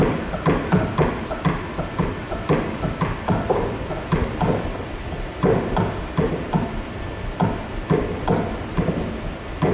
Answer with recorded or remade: recorded